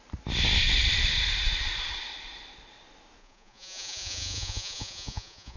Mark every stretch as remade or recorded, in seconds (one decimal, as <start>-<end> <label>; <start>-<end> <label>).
0.0-3.2 recorded; 3.2-5.6 remade